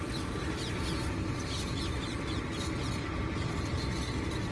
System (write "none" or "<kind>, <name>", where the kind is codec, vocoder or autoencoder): none